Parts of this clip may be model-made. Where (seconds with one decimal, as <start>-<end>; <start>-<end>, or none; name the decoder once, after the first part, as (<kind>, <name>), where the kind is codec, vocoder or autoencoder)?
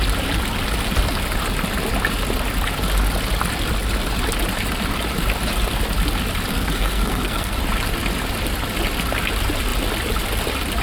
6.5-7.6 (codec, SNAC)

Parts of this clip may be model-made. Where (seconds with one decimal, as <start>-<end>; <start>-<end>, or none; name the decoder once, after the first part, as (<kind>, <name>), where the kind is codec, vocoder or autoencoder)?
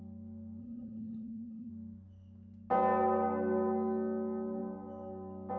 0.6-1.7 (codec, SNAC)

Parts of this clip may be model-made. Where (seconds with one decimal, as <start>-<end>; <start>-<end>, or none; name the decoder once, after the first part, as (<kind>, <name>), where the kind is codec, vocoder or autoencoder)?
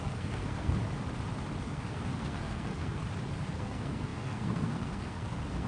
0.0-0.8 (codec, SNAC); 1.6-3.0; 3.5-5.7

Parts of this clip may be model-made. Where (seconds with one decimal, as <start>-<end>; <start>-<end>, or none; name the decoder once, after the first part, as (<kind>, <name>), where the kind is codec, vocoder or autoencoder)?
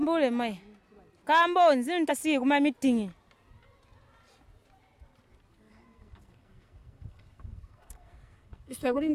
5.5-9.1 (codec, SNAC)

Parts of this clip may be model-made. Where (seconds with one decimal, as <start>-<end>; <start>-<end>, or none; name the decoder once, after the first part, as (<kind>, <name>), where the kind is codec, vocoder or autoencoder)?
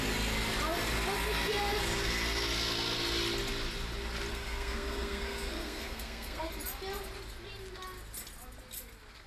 4.3-6.5 (codec, SNAC)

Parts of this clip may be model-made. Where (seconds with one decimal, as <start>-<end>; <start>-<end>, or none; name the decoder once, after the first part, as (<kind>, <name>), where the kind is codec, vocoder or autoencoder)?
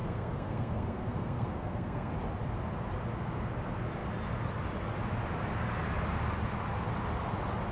0.0-2.1 (codec, SNAC)